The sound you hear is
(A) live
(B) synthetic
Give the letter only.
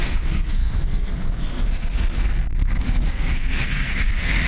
B